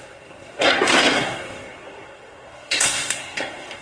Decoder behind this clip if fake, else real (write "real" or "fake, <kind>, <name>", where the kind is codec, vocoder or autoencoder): fake, codec, SNAC